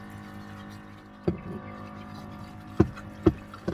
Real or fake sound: real